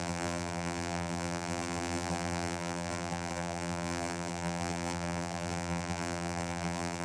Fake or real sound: fake